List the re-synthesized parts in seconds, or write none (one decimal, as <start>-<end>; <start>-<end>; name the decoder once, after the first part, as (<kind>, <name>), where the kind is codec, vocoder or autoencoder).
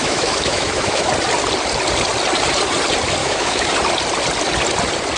0.0-1.1 (autoencoder, DAC-VAE); 3.2-3.7